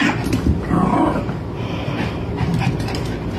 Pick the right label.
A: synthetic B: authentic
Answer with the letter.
B